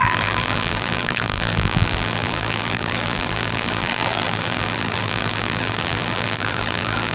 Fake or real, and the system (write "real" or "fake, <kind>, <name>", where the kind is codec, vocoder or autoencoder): fake, vocoder, BigVGAN v2